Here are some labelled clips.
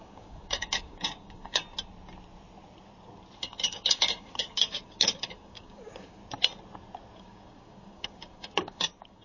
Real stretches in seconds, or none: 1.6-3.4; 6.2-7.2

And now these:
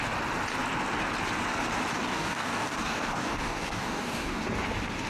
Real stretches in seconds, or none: 0.0-1.9; 4.4-5.1

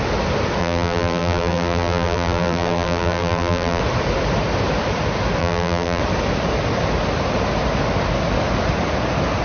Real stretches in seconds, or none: 0.0-0.6; 3.8-5.4; 6.0-9.4

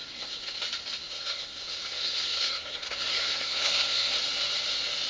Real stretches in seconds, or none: 0.6-1.0; 4.1-5.1

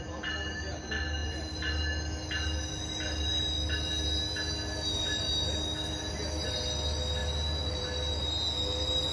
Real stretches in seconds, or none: 0.0-9.1